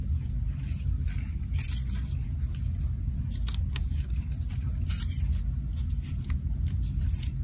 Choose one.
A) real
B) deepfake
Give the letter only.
A